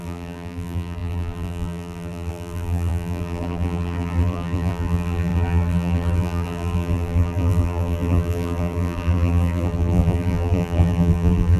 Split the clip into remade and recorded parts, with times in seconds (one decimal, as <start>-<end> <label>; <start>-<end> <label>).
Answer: 0.0-11.6 remade